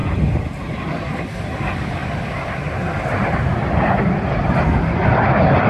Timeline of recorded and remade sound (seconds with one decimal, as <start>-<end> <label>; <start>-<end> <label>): 0.0-0.6 recorded; 0.6-5.7 remade